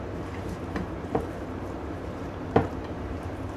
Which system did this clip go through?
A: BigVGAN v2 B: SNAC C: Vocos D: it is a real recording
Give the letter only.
A